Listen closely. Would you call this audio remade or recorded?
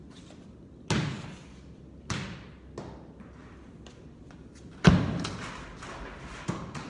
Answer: recorded